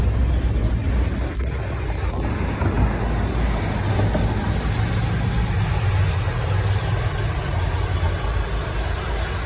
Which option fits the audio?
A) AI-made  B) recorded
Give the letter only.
B